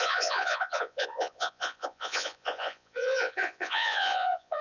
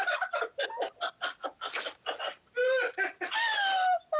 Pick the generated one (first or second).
first